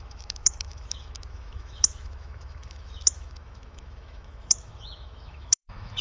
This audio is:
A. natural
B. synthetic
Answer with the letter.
B